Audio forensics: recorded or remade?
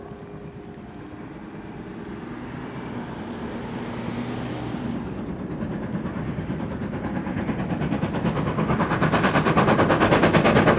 recorded